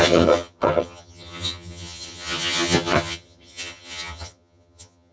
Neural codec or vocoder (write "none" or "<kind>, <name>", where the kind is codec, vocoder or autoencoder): vocoder, HiFi-GAN